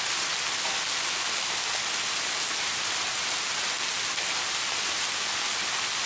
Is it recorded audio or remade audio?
recorded